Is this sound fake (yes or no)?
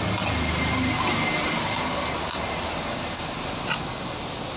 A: no